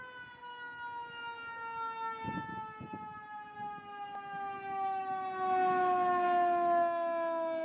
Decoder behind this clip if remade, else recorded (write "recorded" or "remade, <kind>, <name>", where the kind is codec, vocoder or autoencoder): recorded